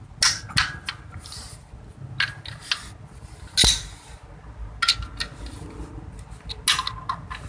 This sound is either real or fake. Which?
real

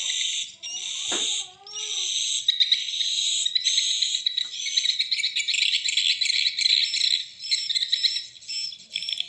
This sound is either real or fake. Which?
real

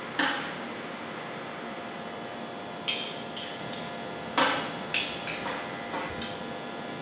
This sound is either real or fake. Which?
real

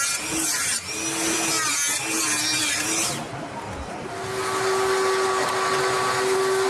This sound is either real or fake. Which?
real